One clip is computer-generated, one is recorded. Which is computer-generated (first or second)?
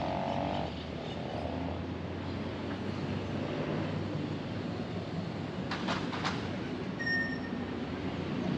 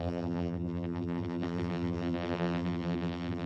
second